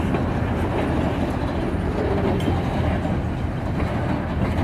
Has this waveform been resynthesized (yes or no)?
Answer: no